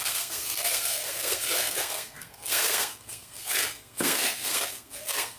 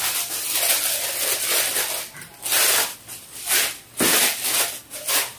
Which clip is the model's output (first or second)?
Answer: first